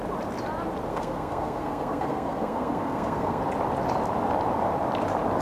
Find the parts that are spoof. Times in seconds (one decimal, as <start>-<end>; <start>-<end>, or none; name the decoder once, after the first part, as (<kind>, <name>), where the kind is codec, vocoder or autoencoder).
0.9-3.4 (codec, SNAC)